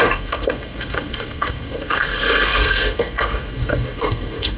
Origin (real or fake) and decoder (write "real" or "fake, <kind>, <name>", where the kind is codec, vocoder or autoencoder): fake, codec, SNAC